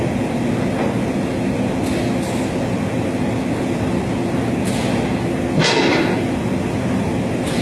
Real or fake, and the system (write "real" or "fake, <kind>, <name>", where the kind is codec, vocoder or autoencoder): real